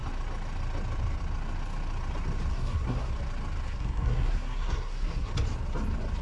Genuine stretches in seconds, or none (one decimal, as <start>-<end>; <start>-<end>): 0.0-2.5; 3.1-3.6; 5.3-6.2

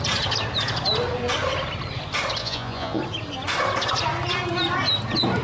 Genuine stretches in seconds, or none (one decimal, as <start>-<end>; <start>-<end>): 0.0-2.4; 3.0-5.4

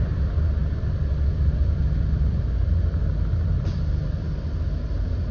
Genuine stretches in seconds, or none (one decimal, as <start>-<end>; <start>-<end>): 0.0-5.3

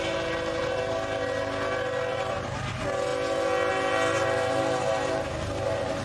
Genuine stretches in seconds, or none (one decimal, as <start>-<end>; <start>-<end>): 0.0-2.1; 2.7-6.0